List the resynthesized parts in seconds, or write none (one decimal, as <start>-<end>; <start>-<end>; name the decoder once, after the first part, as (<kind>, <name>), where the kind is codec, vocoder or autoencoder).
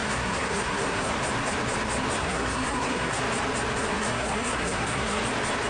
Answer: 0.0-1.1 (codec, SNAC); 2.2-3.2; 3.8-5.2